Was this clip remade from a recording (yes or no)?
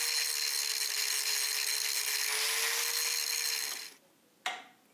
no